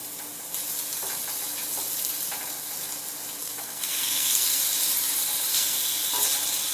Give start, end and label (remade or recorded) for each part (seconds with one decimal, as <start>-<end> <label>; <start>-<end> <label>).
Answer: 0.0-3.4 recorded; 3.4-4.6 remade; 4.6-5.5 recorded; 5.5-6.1 remade; 6.1-6.7 recorded